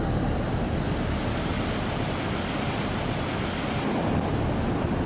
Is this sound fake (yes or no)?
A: no